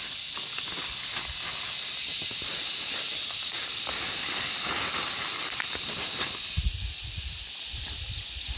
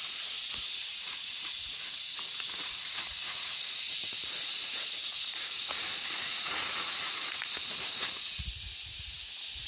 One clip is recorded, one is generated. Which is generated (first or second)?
second